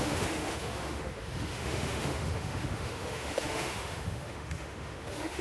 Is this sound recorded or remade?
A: remade